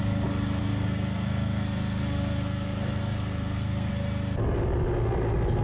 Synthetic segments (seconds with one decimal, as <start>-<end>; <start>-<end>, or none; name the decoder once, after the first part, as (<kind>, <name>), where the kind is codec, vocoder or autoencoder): 0.6-3.9 (codec, SNAC)